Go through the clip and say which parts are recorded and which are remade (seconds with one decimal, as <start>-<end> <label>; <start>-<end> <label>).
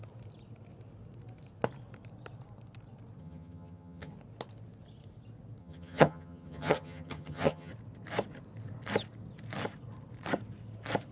0.0-3.2 recorded; 3.2-4.1 remade; 4.1-5.6 recorded; 5.6-7.7 remade; 7.7-11.1 recorded